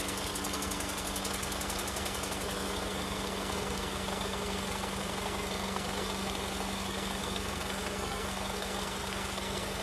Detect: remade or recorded remade